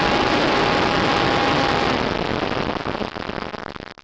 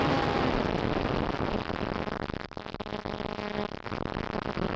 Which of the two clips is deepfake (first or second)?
second